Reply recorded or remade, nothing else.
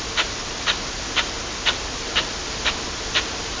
recorded